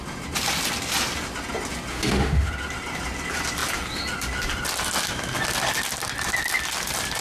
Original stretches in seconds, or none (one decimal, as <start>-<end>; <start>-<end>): 0.0-1.9; 2.5-7.2